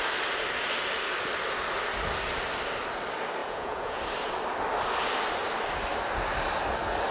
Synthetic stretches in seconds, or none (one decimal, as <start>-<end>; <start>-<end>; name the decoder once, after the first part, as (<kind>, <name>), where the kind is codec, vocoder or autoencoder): 3.4-4.0 (vocoder, Vocos)